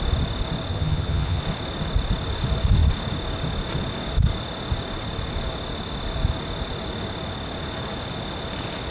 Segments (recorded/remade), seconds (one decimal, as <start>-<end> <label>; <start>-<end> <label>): 0.0-0.7 recorded; 0.7-1.4 remade; 1.4-8.9 recorded